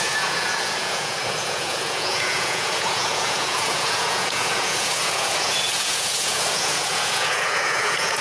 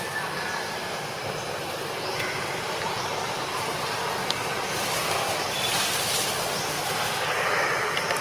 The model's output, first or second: first